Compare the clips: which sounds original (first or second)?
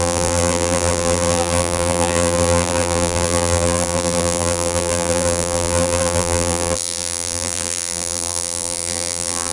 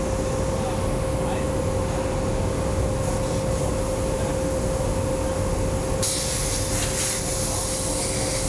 second